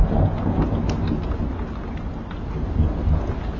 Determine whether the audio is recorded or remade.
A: recorded